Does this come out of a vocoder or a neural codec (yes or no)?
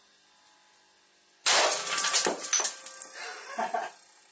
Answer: no